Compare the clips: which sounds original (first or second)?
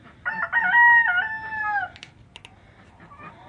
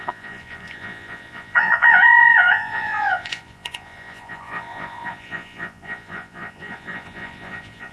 first